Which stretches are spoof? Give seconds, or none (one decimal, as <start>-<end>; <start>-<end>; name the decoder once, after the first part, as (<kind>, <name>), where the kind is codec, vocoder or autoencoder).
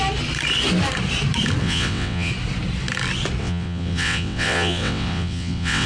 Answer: 1.6-2.3 (vocoder, WaveNeXt); 3.4-5.9